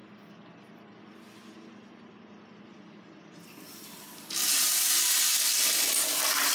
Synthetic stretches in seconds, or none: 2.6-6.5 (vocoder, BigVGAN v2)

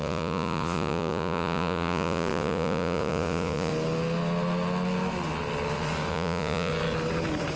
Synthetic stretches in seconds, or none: 0.0-3.7 (vocoder, Vocos); 6.1-6.7